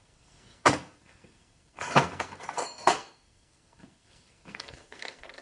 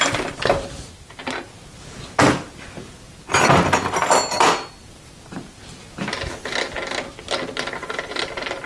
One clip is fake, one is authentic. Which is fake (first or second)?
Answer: first